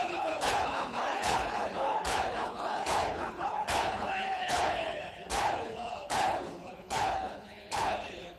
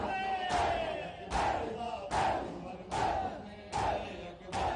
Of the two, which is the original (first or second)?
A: second